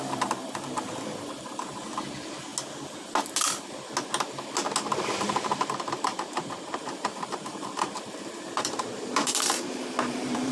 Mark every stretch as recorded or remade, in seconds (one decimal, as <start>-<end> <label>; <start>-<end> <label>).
0.0-2.5 remade; 2.5-5.0 recorded; 5.0-10.5 remade